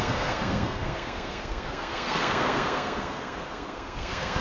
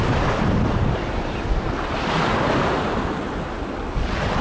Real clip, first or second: second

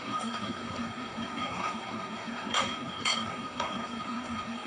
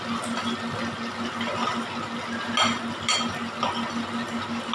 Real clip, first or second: second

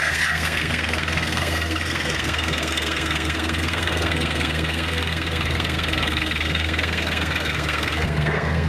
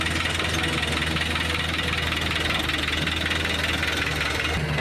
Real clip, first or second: second